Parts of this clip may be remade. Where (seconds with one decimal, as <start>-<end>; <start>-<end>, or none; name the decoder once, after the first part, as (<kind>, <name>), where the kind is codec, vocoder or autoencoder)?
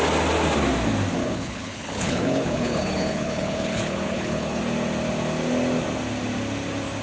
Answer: 1.2-4.6 (codec, HILCodec)